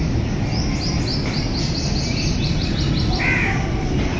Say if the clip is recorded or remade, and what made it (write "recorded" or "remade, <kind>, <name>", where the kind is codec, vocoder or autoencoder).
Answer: recorded